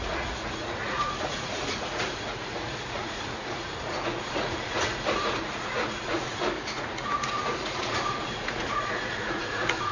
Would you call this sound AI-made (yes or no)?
yes